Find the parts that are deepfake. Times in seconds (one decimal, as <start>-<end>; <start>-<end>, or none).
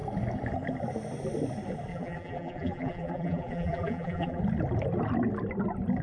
1.9-4.4